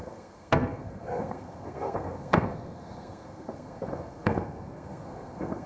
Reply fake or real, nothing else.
fake